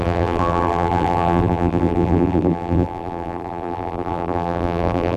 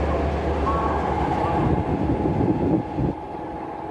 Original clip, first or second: second